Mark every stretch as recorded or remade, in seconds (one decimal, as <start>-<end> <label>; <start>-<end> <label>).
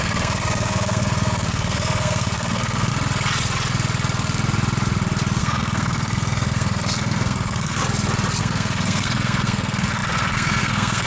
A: 0.0-2.9 remade; 2.9-5.4 recorded; 5.4-7.8 remade; 7.8-8.4 recorded; 8.4-11.1 remade